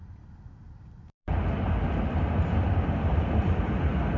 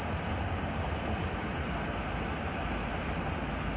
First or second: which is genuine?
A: second